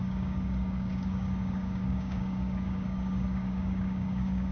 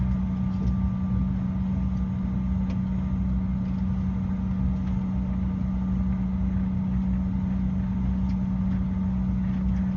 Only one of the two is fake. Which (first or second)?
first